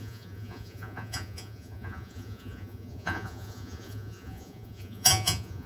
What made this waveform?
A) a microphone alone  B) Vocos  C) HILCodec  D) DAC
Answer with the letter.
B